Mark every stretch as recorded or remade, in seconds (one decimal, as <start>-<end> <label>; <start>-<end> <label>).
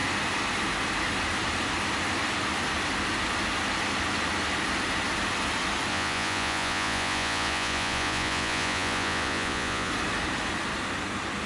0.0-5.9 recorded; 5.9-9.9 remade; 9.9-11.5 recorded